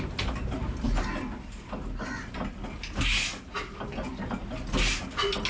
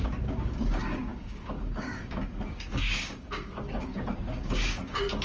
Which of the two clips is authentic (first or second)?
first